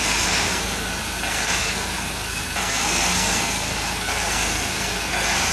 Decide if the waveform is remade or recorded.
remade